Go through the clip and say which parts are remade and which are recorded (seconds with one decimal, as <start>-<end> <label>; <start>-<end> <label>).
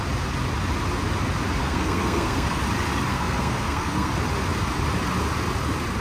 0.0-1.6 recorded; 1.6-2.6 remade; 2.6-3.1 recorded; 3.1-4.1 remade; 4.1-6.0 recorded